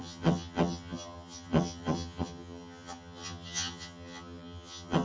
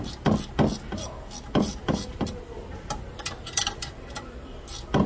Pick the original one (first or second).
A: second